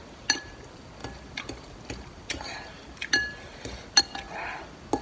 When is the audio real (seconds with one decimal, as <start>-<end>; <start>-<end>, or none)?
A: 0.0-5.0